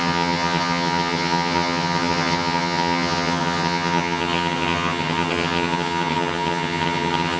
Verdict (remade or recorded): remade